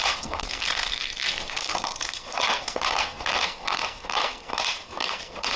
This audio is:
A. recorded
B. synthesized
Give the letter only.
B